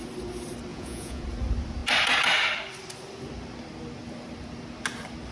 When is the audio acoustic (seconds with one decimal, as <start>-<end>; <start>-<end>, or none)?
0.0-0.7; 1.2-5.3